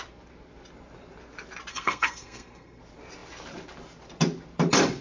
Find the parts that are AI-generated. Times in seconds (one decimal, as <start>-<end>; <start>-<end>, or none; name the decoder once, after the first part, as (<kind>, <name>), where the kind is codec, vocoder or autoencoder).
1.7-2.8 (codec, SNAC)